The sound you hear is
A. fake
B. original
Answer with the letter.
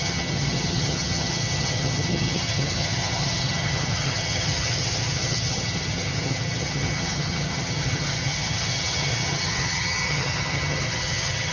A